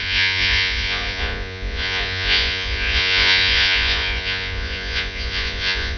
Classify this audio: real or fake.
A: fake